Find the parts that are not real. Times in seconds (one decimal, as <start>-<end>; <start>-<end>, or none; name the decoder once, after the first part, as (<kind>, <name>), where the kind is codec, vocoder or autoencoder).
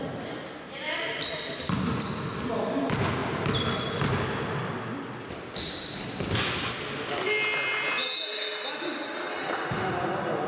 none